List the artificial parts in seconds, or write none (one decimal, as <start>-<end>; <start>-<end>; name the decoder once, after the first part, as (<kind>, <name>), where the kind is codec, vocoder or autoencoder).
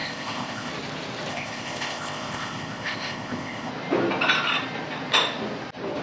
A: 0.0-0.7 (codec, ZipCodec); 1.3-3.7